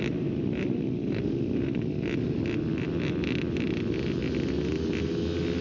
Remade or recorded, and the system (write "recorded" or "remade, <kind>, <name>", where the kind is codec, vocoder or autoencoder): recorded